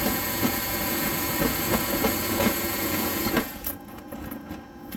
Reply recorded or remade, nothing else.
remade